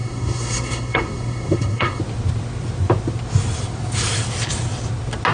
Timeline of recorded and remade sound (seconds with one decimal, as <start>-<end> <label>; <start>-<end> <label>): 0.0-2.0 remade; 2.0-5.3 recorded